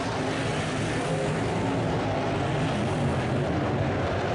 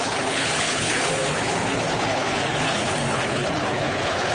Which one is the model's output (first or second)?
second